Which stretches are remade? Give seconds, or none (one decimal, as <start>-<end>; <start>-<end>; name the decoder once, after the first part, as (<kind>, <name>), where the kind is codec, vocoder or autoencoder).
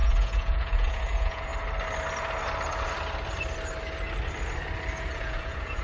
0.0-1.5 (vocoder, Vocos); 5.0-5.8